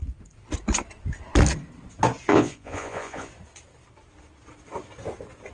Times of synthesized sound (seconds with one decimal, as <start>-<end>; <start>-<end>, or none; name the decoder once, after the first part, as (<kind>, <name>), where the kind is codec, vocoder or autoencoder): 2.3-3.3 (vocoder, Vocos)